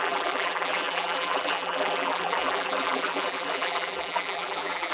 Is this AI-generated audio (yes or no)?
yes